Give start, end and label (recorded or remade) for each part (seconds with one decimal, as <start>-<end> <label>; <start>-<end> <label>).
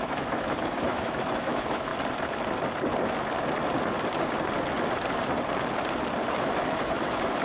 0.0-1.9 remade; 1.9-6.3 recorded; 6.3-7.4 remade